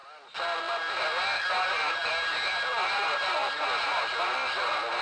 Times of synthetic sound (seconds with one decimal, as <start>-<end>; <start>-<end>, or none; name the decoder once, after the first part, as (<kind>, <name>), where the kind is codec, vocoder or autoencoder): none